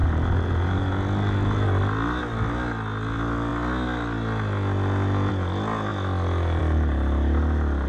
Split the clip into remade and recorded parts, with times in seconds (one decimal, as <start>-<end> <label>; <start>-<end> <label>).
0.0-7.9 recorded

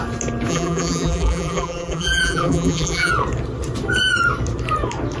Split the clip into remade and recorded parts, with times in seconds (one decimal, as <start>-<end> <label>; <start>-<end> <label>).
0.0-0.5 recorded; 0.5-3.1 remade; 3.1-5.2 recorded

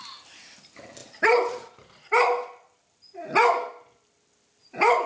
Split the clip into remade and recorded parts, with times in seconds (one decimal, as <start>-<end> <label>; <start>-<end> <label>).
0.0-1.0 recorded; 1.0-3.1 remade; 3.1-4.6 recorded; 4.6-5.1 remade

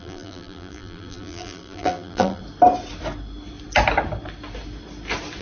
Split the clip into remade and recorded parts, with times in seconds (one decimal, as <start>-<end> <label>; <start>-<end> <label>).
0.0-2.4 remade; 2.4-5.4 recorded